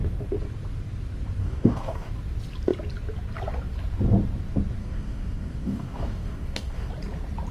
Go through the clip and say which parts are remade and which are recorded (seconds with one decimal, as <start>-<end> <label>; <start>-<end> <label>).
0.0-1.4 recorded; 1.4-2.1 remade; 2.1-4.8 recorded; 4.8-6.9 remade; 6.9-7.5 recorded